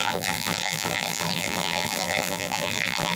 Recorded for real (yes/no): no